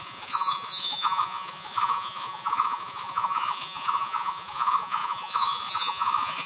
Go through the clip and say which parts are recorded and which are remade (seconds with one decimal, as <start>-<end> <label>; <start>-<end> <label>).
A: 0.0-6.5 remade